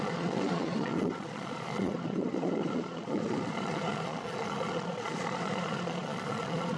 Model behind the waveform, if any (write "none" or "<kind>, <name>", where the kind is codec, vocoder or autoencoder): vocoder, Vocos